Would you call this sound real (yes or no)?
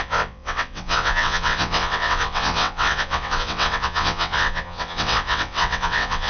no